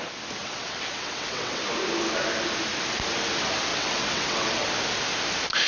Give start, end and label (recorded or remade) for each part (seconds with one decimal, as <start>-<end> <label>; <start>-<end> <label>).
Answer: 0.0-0.4 recorded; 0.4-1.6 remade; 1.6-3.7 recorded; 3.7-4.7 remade; 4.7-5.7 recorded